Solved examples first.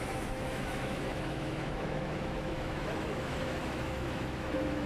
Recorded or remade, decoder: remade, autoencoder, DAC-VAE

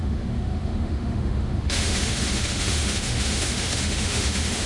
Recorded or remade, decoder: remade, autoencoder, DAC-VAE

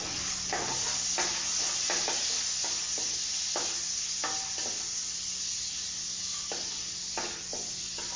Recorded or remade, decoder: recorded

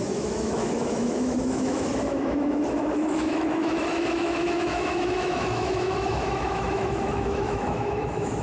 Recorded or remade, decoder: remade, autoencoder, DAC-VAE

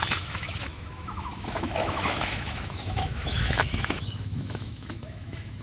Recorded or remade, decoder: remade, autoencoder, DAC-VAE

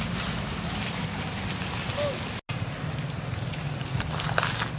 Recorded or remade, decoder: recorded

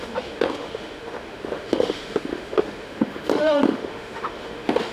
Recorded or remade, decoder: remade, autoencoder, DAC-VAE